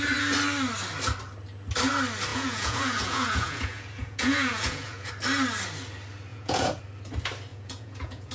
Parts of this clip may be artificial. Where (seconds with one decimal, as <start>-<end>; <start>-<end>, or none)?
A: 2.3-5.1; 6.3-6.8; 7.5-8.3